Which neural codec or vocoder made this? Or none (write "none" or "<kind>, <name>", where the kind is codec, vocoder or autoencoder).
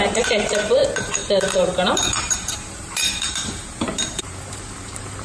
vocoder, BigVGAN v2